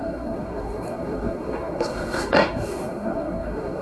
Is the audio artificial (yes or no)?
yes